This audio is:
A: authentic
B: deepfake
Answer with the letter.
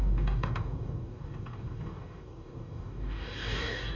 B